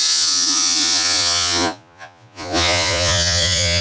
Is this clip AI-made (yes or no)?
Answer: yes